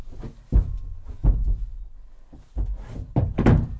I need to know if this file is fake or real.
real